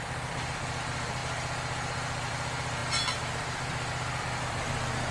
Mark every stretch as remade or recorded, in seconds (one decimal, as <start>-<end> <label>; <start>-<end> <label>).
0.0-5.1 recorded